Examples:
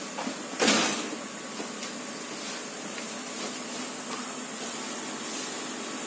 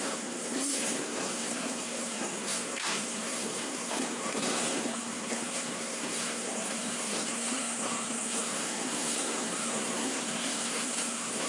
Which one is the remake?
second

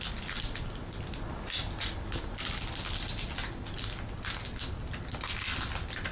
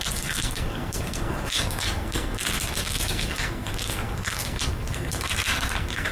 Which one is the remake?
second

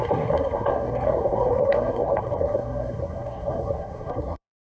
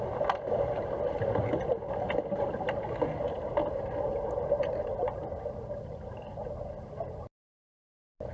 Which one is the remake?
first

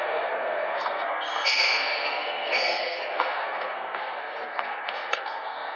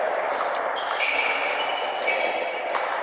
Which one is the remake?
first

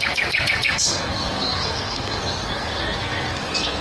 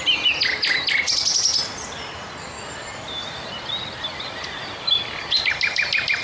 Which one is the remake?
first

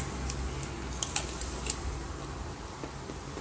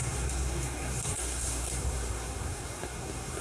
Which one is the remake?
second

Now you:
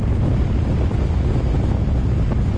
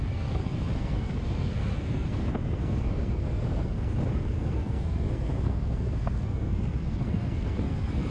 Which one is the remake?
second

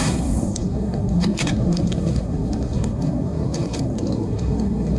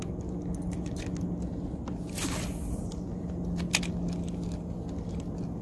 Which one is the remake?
first